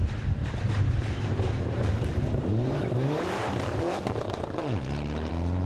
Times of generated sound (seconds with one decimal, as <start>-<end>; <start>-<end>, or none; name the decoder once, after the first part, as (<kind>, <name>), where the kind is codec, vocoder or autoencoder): 0.4-1.5 (vocoder, BigVGAN v2); 2.4-5.3